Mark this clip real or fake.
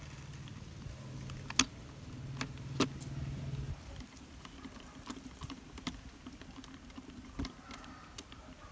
real